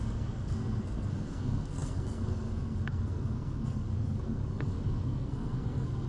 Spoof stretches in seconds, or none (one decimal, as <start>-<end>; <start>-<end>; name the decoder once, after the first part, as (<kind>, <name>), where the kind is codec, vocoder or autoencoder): 0.0-6.1 (codec, SNAC)